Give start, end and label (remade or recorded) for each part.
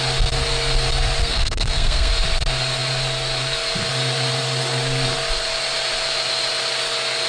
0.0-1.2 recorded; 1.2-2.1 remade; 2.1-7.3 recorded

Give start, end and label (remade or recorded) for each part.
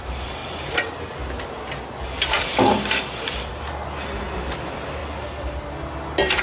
0.0-6.4 recorded